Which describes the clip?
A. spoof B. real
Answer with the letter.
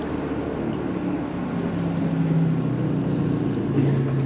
B